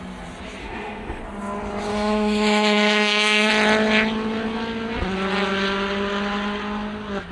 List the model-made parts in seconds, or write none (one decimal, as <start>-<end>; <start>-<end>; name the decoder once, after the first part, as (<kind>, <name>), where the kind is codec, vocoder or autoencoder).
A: 0.6-1.2 (autoencoder, DAC-VAE); 1.9-3.5